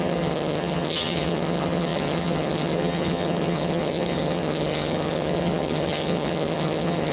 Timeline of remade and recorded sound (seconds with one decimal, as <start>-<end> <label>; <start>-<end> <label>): 0.0-7.1 remade